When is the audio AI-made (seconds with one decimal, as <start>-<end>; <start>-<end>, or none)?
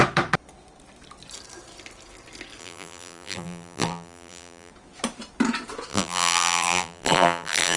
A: 2.6-4.7; 5.9-7.8